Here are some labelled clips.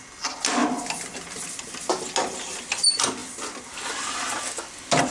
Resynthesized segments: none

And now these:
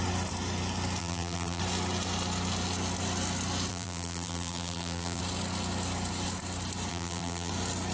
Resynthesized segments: 1.0-1.6 (vocoder, BigVGAN v2); 3.7-5.2; 6.9-7.5